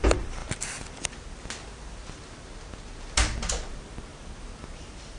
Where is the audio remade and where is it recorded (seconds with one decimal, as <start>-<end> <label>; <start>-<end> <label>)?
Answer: 0.0-0.4 remade; 0.4-3.5 recorded; 3.5-4.1 remade; 4.1-4.7 recorded; 4.7-5.2 remade